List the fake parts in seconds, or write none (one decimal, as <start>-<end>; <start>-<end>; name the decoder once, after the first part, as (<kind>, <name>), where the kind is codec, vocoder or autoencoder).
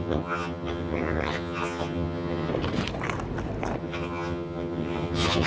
0.0-2.5 (vocoder, HiFi-GAN); 3.8-5.5